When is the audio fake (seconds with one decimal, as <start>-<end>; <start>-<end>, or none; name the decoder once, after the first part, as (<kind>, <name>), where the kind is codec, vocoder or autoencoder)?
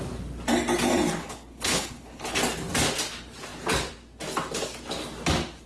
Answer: 1.2-2.4 (codec, HILCodec)